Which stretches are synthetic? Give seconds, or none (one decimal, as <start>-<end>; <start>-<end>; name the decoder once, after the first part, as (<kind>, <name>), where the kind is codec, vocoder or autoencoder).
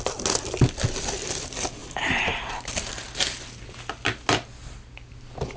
1.8-2.9 (vocoder, BigVGAN v2)